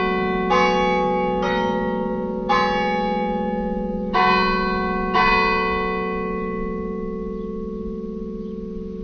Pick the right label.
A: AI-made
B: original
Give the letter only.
B